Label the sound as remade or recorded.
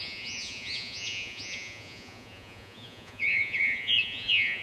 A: remade